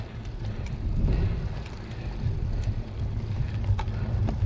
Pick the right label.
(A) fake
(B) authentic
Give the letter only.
B